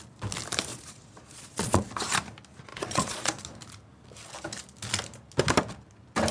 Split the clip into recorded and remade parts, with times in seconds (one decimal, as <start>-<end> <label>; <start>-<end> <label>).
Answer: 0.0-0.7 recorded; 0.7-1.8 remade; 1.8-2.7 recorded; 2.7-3.4 remade; 3.4-6.3 recorded